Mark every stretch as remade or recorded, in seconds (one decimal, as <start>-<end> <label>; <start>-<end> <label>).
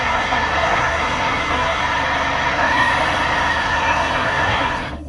0.0-1.8 remade; 1.8-2.5 recorded; 2.5-2.9 remade; 2.9-3.5 recorded; 3.5-5.1 remade